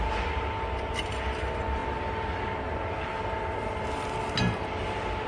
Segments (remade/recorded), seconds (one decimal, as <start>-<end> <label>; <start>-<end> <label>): 0.0-5.3 recorded